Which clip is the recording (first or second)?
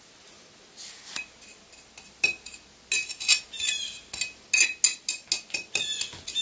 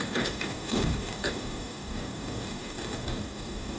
first